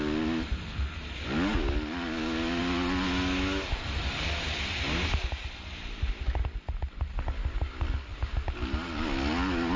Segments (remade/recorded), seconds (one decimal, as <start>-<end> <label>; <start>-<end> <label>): 0.0-9.8 recorded